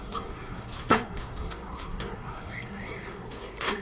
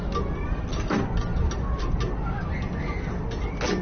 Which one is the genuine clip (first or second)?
second